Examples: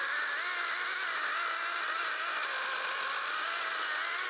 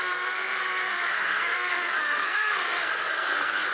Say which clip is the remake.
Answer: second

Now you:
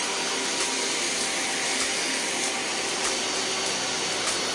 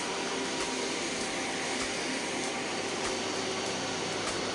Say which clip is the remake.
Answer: second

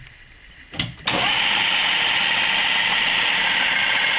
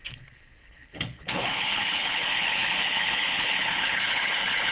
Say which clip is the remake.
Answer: second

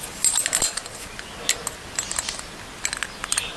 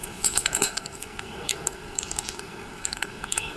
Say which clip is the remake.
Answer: second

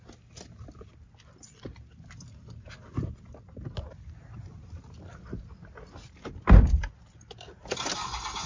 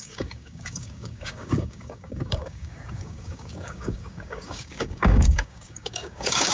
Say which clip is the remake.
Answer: second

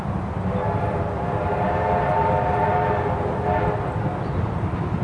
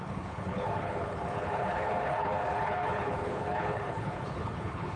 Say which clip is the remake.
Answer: second